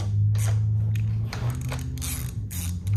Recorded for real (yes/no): yes